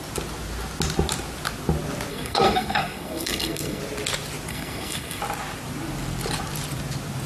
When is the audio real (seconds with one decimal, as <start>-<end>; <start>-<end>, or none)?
0.0-2.1; 3.8-4.5; 5.2-7.3